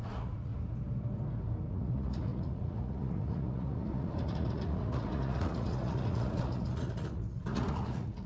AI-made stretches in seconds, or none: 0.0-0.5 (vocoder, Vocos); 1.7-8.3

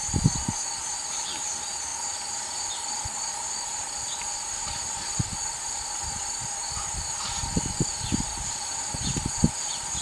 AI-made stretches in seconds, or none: none

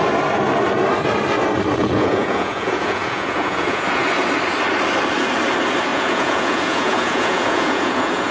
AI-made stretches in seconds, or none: 1.8-4.0 (vocoder, Vocos); 5.9-8.3

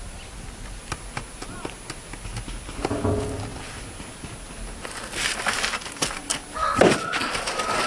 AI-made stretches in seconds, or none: none

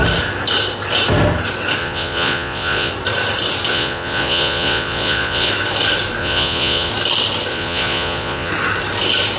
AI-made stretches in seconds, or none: 1.8-2.9 (vocoder, Vocos); 3.7-5.5; 6.2-6.9; 7.5-8.5

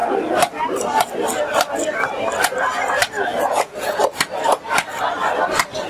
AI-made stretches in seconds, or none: 3.3-4.0 (vocoder, Vocos)